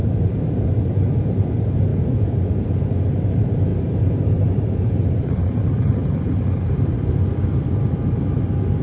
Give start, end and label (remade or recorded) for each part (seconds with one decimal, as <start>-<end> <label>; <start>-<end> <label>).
0.0-8.8 remade